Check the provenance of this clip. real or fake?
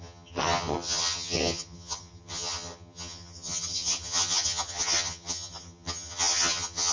fake